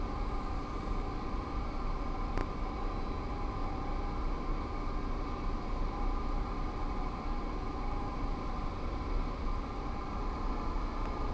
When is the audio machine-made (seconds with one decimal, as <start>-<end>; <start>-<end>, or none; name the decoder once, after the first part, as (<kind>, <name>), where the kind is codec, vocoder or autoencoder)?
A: 0.0-2.4 (vocoder, BigVGAN v2); 6.3-11.3